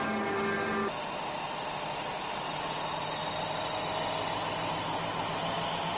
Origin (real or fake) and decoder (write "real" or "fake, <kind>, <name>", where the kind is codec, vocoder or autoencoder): real